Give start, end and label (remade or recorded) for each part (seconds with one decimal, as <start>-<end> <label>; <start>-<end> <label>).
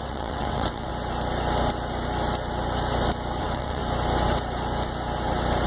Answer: 0.0-0.9 remade; 0.9-3.4 recorded; 3.4-3.8 remade; 3.8-5.7 recorded